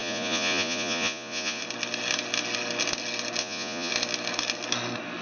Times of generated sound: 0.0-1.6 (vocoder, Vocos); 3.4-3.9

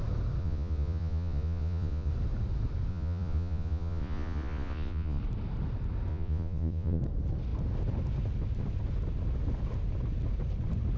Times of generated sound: 0.4-2.1 (vocoder, Vocos); 2.9-5.2; 6.1-7.0